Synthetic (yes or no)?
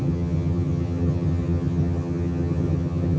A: yes